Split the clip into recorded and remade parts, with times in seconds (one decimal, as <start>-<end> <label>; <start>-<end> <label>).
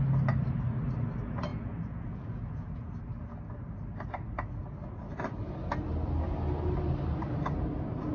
0.0-1.5 recorded; 1.5-2.9 remade; 2.9-8.1 recorded